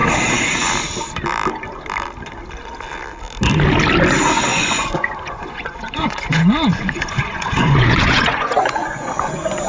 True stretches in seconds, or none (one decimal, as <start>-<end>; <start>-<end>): 0.0-4.5